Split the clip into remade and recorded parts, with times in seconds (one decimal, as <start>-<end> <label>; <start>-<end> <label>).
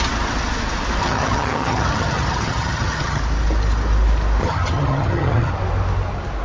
0.0-1.0 recorded; 1.0-3.2 remade; 3.2-4.4 recorded; 4.4-5.5 remade; 5.5-6.4 recorded